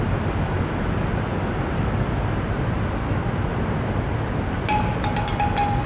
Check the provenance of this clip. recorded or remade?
recorded